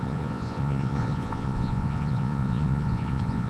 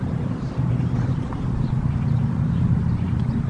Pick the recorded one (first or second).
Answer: second